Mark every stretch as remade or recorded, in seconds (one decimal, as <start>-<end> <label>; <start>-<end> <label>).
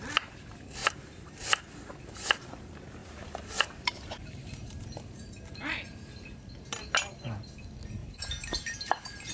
0.0-0.8 recorded; 0.8-2.5 remade; 2.5-3.0 recorded; 3.0-5.4 remade; 5.4-8.0 recorded; 8.0-9.3 remade